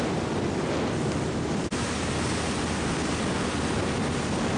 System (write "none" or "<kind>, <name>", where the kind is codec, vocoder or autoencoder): none